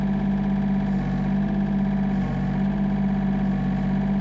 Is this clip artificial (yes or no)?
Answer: no